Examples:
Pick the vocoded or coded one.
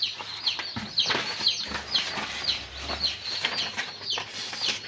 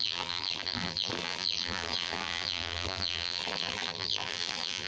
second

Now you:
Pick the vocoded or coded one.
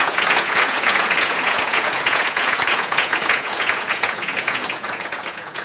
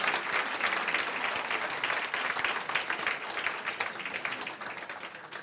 first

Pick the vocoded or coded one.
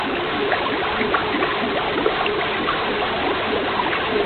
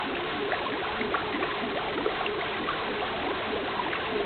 second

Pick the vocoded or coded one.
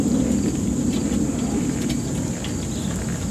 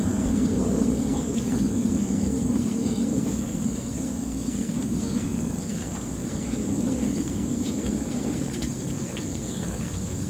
second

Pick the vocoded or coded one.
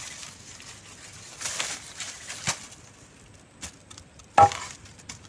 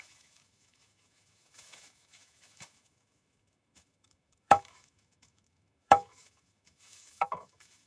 second